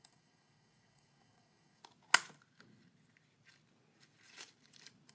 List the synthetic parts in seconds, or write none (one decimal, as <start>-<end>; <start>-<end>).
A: 0.0-1.8